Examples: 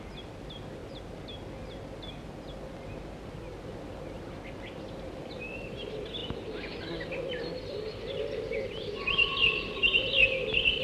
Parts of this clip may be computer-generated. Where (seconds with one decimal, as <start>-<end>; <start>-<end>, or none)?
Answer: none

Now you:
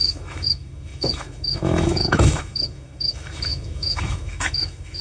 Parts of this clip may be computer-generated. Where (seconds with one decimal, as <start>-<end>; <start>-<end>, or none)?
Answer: 0.0-5.0

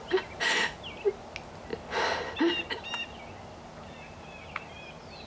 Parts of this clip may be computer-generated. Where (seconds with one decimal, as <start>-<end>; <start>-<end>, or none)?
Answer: none

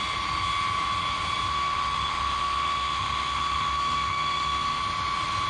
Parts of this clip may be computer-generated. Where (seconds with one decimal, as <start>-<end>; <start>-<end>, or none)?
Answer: 1.5-4.8

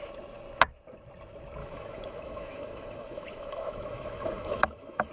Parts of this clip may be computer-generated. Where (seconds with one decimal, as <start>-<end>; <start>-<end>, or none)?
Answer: 1.6-5.1

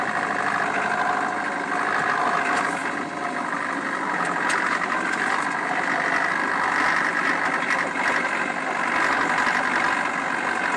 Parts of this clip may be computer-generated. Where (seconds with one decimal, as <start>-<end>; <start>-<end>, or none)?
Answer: none